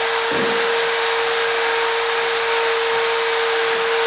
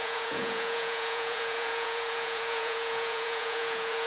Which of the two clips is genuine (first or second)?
first